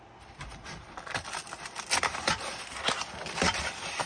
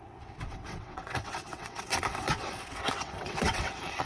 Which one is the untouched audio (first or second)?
first